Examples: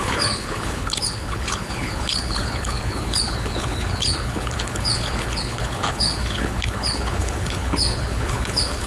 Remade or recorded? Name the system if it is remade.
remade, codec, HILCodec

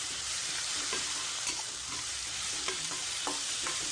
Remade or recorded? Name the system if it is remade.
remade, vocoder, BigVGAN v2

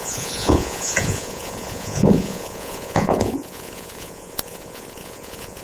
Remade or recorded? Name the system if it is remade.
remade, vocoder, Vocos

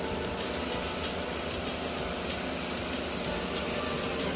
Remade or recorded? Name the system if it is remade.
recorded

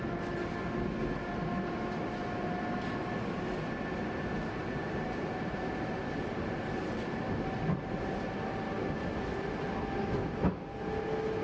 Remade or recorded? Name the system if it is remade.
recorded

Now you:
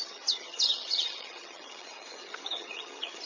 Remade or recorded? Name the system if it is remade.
remade, vocoder, HiFi-GAN